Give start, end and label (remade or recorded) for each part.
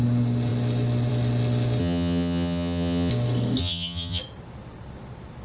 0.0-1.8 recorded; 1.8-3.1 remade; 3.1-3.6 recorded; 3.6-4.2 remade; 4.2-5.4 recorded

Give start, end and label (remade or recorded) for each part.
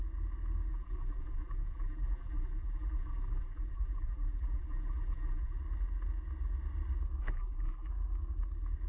0.0-0.7 recorded; 0.7-5.6 remade; 5.6-7.2 recorded; 7.2-7.9 remade; 7.9-8.9 recorded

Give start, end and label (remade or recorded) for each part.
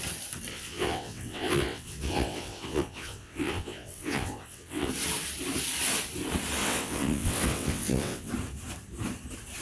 0.0-0.5 recorded; 0.5-4.9 remade; 4.9-6.6 recorded; 6.6-8.3 remade; 8.3-9.6 recorded